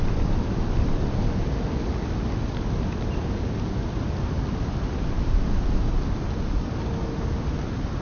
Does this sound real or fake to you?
real